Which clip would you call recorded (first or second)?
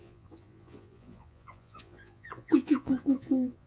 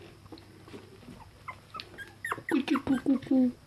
second